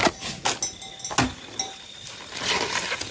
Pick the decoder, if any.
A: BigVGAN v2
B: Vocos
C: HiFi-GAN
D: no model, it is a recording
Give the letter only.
D